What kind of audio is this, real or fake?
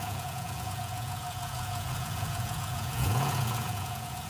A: fake